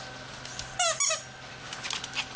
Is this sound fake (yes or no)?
no